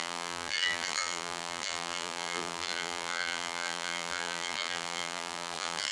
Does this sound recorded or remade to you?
remade